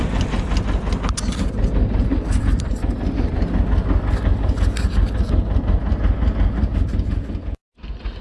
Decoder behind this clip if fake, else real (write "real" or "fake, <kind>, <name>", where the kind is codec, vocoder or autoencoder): real